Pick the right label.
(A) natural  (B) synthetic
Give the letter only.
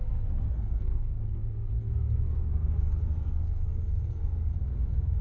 B